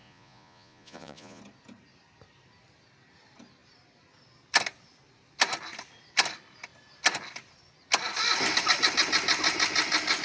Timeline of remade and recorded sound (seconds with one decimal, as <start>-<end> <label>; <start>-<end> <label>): 0.0-1.4 remade; 1.4-10.2 recorded